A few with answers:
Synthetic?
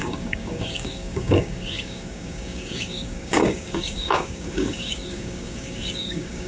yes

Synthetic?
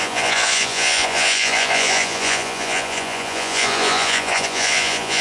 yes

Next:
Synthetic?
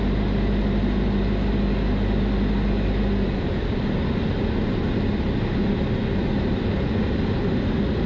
no